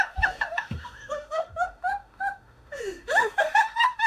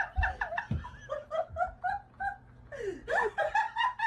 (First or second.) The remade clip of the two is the first